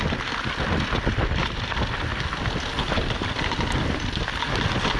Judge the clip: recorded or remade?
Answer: recorded